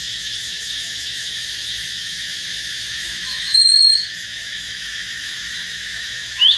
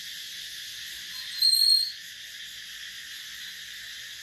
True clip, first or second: second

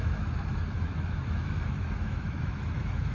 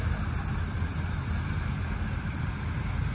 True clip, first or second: second